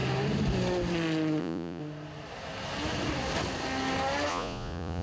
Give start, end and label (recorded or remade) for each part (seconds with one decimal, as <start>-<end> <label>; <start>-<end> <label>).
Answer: 0.0-1.4 recorded; 1.4-1.8 remade; 1.8-4.3 recorded; 4.3-5.0 remade